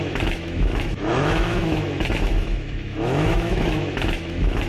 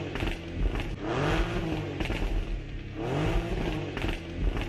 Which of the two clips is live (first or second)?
second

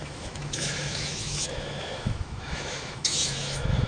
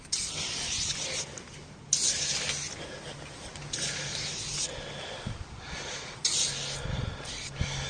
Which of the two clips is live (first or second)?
second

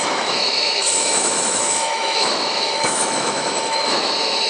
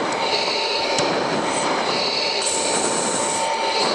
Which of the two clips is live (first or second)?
second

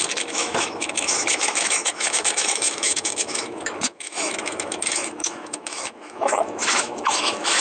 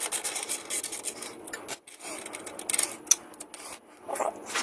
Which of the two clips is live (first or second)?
second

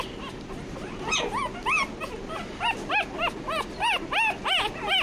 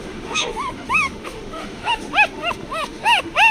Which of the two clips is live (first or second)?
first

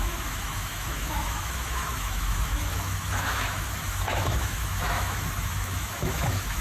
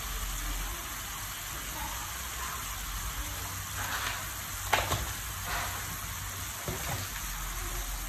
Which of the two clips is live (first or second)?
second